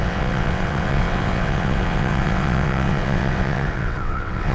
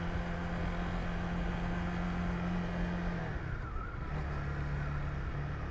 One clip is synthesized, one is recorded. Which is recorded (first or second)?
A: second